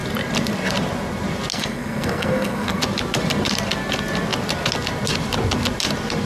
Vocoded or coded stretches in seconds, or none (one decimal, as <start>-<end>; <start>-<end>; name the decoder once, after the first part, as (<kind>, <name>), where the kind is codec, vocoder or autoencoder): 1.5-2.8 (codec, SNAC)